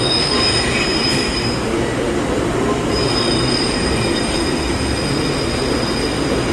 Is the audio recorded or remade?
recorded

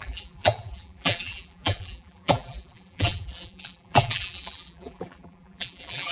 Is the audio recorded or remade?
remade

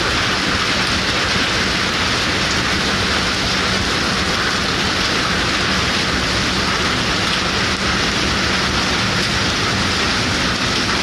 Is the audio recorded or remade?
recorded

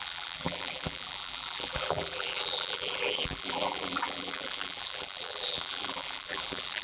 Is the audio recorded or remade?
remade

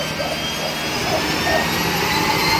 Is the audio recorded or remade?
recorded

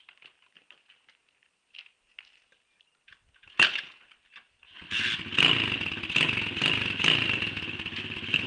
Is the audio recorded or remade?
recorded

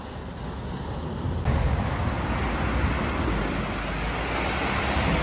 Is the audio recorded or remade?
recorded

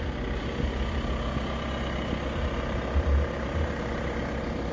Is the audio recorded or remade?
recorded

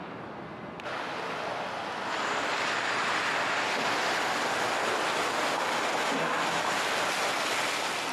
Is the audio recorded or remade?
recorded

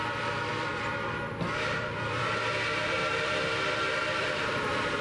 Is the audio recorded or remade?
remade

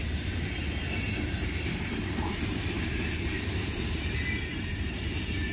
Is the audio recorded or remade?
remade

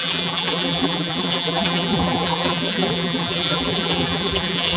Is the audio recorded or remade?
remade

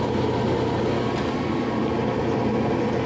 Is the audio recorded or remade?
recorded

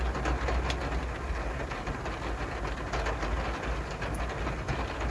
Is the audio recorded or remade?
recorded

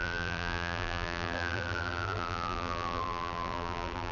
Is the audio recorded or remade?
remade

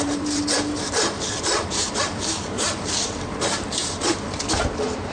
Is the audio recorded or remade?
remade